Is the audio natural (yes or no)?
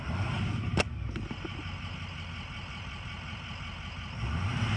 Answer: yes